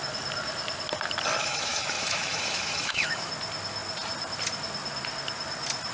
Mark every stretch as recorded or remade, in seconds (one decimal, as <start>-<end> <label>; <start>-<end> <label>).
0.0-1.4 recorded; 1.4-3.3 remade; 3.3-5.9 recorded

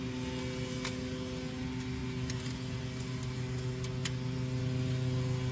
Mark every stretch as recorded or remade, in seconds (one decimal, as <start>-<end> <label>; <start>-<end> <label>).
0.0-5.5 recorded

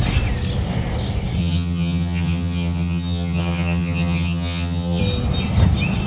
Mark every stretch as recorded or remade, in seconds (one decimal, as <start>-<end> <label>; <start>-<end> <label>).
0.0-1.4 recorded; 1.4-5.0 remade; 5.0-6.1 recorded